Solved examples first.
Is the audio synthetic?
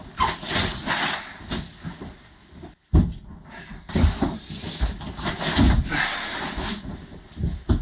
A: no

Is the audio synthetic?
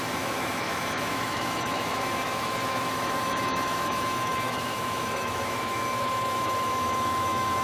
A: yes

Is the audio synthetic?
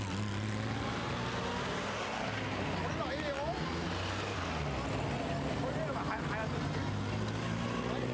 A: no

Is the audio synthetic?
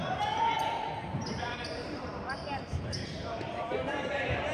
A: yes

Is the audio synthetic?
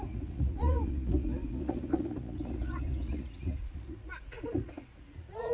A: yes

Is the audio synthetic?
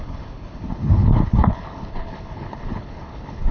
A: yes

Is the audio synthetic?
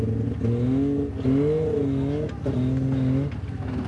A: no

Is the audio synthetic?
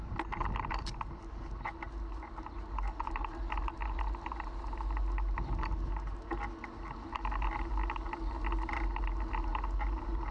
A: no